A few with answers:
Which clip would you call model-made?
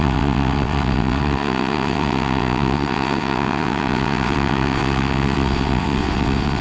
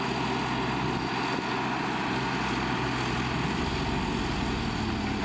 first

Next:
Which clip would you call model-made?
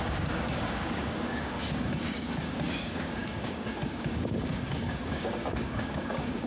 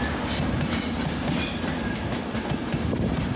first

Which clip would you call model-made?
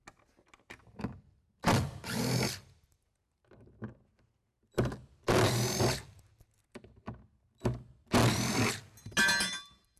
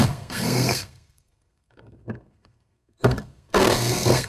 second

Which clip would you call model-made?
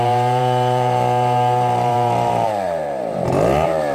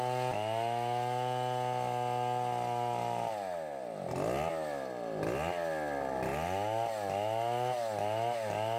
first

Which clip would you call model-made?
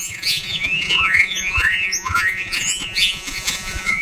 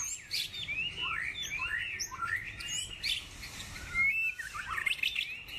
first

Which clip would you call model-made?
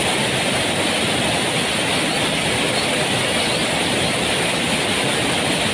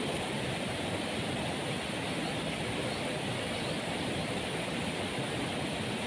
second